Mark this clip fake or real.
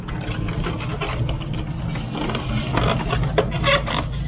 real